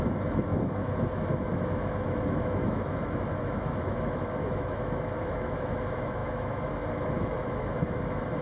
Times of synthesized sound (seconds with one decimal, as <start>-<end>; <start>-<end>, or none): 0.0-8.4